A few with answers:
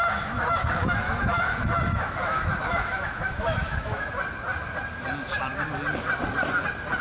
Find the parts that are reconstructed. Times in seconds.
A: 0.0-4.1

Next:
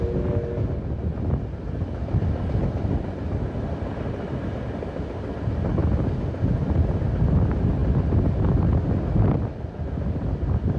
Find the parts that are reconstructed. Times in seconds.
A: none

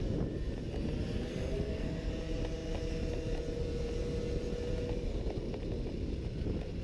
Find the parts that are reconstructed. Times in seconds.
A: 1.3-2.1

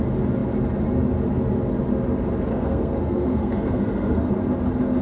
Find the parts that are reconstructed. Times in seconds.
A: 2.5-4.3

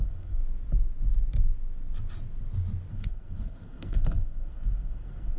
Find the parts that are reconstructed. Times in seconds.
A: 0.0-0.4; 2.9-5.4

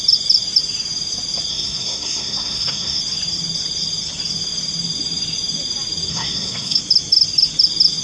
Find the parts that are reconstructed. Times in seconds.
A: 1.5-3.0; 6.1-6.8